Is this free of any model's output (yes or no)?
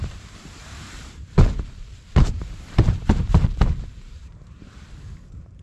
no